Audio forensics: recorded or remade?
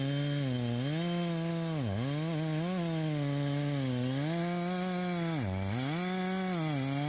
recorded